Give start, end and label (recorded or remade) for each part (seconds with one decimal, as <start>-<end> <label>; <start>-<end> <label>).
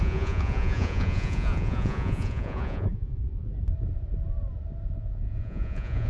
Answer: 0.0-3.5 remade; 3.5-5.0 recorded; 5.0-6.1 remade